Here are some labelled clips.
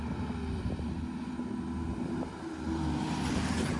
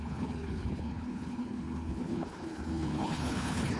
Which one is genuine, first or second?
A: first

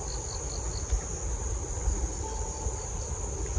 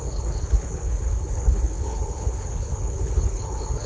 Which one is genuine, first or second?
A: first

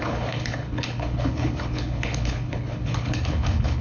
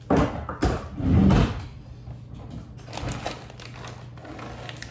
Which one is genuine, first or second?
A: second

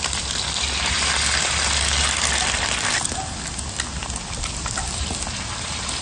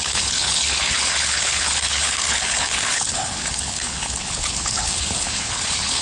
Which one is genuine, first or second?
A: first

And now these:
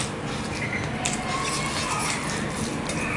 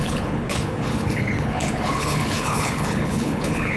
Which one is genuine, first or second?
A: first